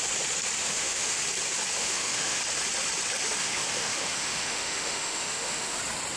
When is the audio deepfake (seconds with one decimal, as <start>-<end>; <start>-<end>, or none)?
0.6-1.2; 1.8-2.4; 3.4-5.8

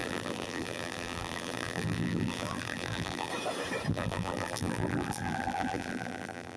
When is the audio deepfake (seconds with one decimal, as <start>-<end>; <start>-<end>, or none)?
0.0-3.3; 3.9-6.6